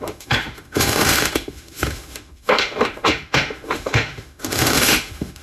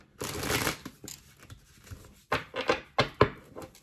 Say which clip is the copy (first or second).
first